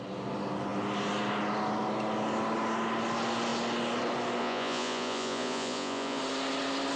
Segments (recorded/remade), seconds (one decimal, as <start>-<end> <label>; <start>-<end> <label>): 0.0-4.4 recorded; 4.4-6.2 remade; 6.2-7.0 recorded